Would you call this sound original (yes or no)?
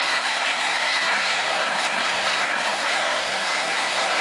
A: no